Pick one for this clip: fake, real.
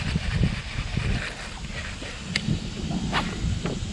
real